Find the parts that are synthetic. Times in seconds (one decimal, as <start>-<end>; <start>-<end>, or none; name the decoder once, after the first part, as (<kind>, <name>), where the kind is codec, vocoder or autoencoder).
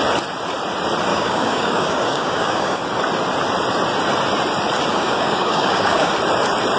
1.1-2.8 (codec, DAC); 4.9-6.1